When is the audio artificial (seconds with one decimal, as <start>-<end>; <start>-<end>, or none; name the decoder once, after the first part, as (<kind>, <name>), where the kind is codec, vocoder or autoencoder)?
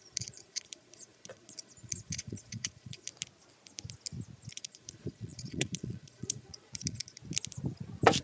0.0-3.1 (vocoder, Vocos); 4.5-7.2